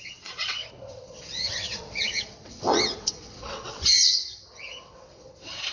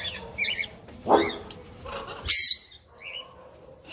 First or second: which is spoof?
first